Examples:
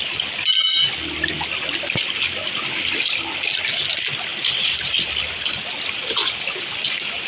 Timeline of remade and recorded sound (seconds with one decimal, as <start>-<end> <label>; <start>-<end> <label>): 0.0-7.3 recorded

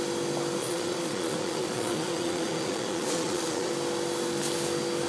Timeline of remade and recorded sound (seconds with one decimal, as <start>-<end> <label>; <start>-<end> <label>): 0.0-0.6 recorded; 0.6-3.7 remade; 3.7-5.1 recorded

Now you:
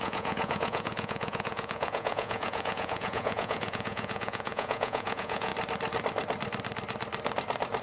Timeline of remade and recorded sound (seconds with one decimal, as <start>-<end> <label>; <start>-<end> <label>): 0.0-5.5 remade; 5.5-7.8 recorded